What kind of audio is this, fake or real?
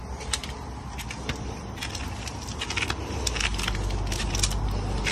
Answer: real